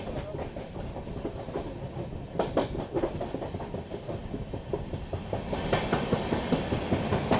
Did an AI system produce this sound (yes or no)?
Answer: no